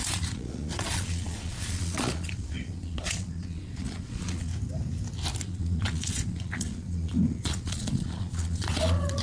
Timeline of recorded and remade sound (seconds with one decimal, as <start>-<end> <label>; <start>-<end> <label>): 0.0-4.5 remade; 4.5-5.4 recorded; 5.4-9.2 remade